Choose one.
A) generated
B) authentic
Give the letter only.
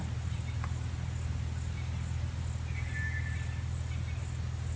B